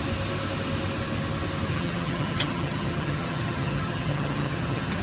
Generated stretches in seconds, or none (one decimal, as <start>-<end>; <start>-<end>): 1.7-5.0